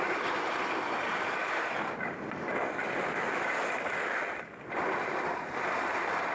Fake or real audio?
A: real